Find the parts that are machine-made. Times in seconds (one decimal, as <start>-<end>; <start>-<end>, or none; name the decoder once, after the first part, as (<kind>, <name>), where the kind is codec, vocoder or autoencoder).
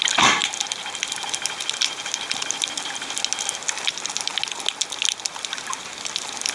none